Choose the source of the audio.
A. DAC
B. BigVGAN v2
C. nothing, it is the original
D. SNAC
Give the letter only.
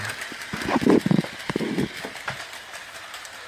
C